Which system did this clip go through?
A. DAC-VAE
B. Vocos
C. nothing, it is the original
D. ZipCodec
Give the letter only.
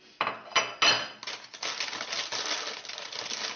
C